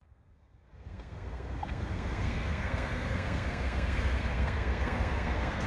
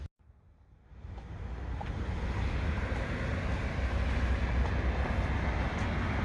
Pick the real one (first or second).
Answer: second